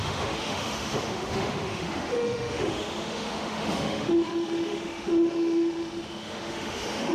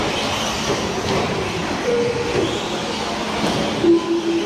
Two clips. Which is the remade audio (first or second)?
first